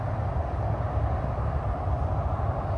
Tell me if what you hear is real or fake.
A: real